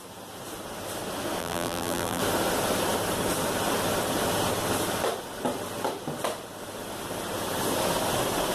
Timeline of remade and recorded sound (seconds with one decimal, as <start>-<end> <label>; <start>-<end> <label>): 0.0-1.4 recorded; 1.4-2.2 remade; 2.2-8.5 recorded